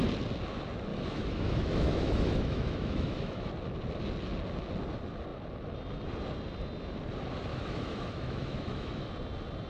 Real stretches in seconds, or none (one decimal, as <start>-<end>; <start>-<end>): 0.0-0.9; 3.5-7.5; 9.1-9.7